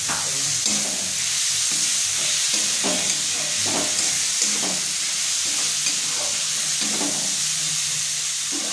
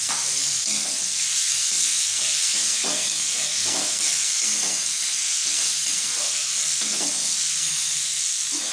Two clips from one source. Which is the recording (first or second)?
first